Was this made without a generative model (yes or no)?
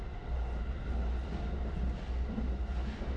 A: yes